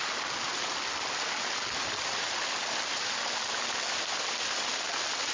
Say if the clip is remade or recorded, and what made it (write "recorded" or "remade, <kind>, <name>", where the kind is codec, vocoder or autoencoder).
recorded